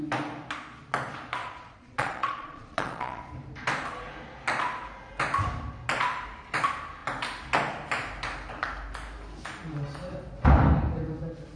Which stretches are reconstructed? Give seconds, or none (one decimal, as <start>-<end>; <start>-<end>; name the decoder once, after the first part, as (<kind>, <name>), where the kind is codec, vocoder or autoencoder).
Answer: 1.4-3.2 (vocoder, Vocos)